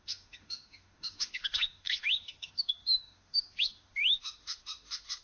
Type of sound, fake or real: fake